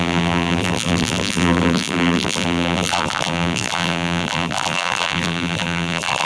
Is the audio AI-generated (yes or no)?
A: yes